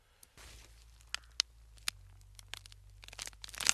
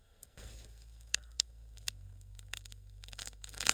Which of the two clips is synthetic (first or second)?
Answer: second